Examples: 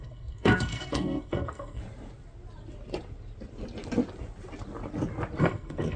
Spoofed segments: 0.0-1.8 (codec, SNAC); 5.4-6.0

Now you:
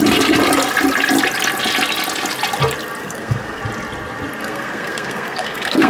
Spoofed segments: 3.0-3.6 (codec, SNAC); 4.4-5.9

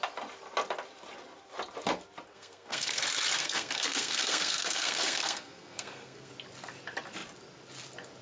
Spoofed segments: 2.3-3.0 (codec, SNAC); 3.4-6.3